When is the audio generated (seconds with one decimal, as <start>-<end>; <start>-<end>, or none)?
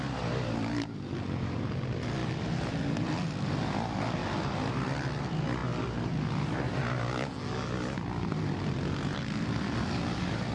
2.2-3.6